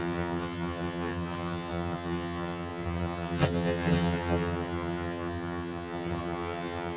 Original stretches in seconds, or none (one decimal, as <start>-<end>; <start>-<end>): none